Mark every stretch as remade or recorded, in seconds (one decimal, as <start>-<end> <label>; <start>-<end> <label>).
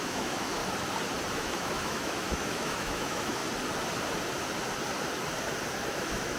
0.0-0.6 remade; 0.6-1.3 recorded; 1.3-3.4 remade; 3.4-5.9 recorded; 5.9-6.4 remade